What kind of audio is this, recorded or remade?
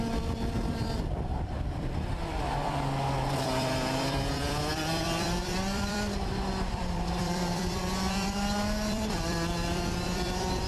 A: remade